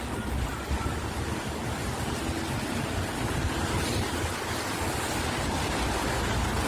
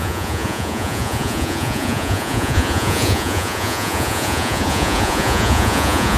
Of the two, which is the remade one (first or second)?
second